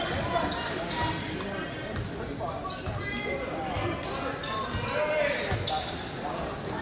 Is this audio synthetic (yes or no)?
no